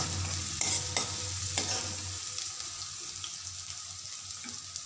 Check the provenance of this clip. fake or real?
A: real